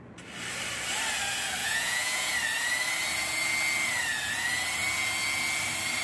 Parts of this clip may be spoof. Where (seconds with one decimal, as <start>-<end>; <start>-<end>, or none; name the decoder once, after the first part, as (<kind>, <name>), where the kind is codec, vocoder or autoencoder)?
1.6-2.3 (vocoder, Vocos)